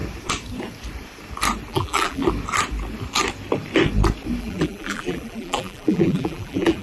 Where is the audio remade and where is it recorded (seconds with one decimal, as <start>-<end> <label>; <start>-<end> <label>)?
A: 0.0-1.7 recorded; 1.7-2.2 remade; 2.2-4.4 recorded; 4.4-6.8 remade